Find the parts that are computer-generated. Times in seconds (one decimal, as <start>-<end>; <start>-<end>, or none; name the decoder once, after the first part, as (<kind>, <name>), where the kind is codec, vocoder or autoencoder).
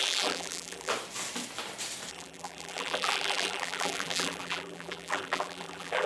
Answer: 0.0-0.9 (vocoder, BigVGAN v2); 2.1-6.1